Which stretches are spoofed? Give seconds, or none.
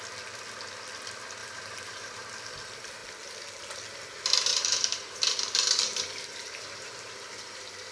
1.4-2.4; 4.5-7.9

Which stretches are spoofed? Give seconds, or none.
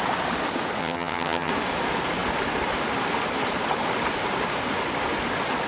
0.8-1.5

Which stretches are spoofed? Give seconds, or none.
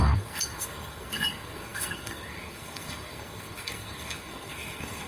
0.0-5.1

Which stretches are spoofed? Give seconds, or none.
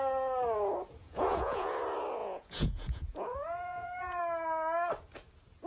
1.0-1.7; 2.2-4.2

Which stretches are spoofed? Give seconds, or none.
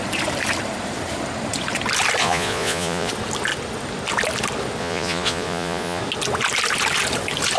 2.2-3.1; 4.8-6.0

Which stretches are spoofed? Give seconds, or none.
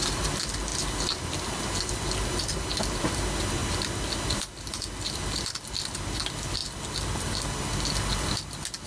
none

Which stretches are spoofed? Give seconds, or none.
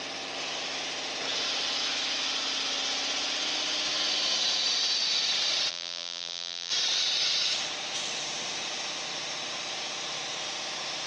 5.7-6.7